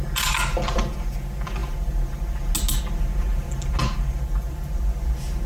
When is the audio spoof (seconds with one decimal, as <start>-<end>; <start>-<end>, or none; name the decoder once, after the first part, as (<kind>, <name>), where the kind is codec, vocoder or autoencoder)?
none

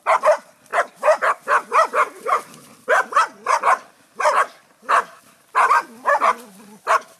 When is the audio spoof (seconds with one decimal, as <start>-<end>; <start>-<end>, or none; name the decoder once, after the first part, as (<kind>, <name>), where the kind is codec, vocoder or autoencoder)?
none